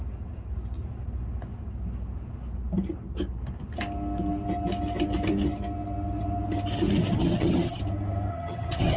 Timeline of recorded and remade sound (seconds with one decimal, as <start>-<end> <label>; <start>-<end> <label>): 0.0-7.1 recorded; 7.1-7.8 remade; 7.8-8.3 recorded; 8.3-9.0 remade